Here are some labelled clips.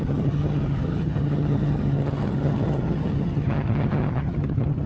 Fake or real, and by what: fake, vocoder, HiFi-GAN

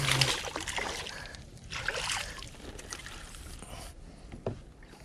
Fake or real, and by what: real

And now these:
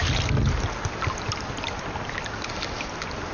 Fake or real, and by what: real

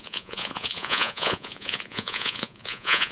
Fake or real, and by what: fake, vocoder, Vocos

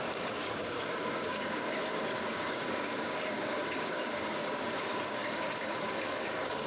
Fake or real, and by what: fake, codec, DAC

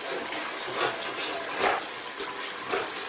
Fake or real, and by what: real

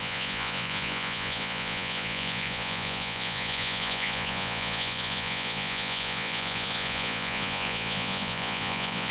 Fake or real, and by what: fake, vocoder, Vocos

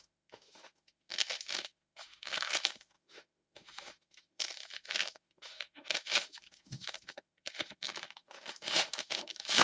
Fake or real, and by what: fake, autoencoder, DAC-VAE